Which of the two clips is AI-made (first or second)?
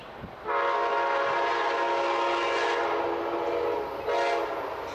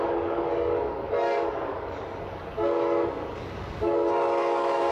second